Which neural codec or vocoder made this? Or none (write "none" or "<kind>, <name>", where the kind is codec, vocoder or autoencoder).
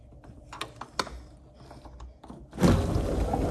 none